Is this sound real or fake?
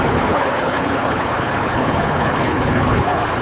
fake